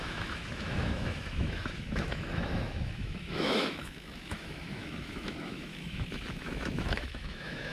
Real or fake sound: fake